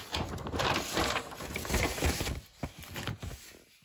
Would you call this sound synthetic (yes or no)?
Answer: no